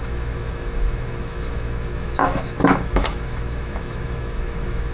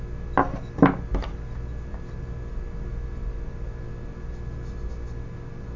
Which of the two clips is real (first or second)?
second